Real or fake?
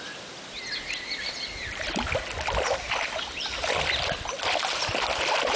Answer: real